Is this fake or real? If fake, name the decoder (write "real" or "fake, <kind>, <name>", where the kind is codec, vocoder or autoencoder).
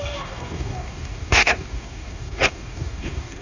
fake, codec, DAC